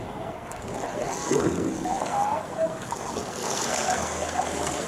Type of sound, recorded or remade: remade